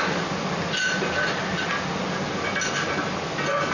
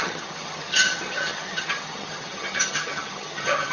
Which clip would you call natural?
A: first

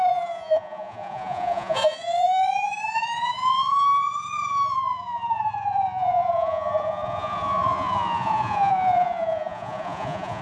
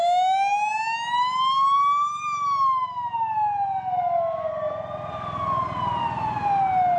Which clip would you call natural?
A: second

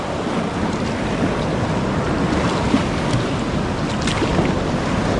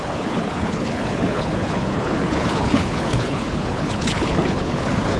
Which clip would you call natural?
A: first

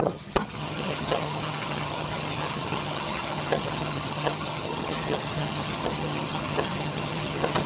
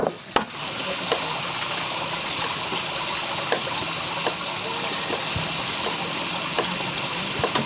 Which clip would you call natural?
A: second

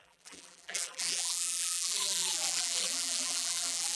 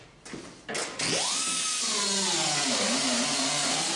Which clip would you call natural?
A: second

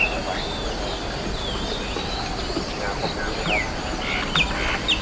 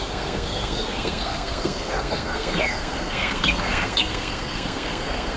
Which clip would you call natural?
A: first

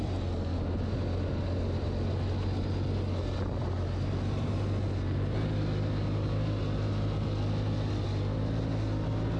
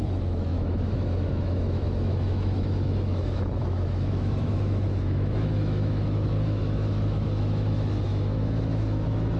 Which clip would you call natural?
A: first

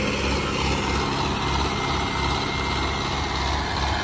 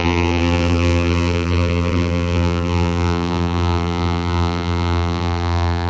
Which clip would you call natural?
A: first